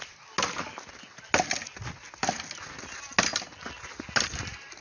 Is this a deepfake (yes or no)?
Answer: no